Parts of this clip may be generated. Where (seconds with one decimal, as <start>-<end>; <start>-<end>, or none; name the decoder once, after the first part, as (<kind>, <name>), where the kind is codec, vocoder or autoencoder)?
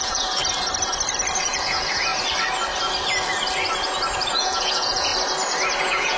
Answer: 0.0-0.4 (vocoder, Vocos); 1.4-2.1; 4.3-5.1; 5.8-6.2